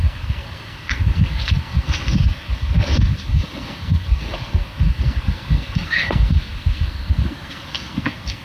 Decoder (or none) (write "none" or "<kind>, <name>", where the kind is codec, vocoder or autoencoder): codec, SNAC